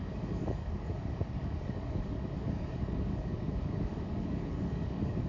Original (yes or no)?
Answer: no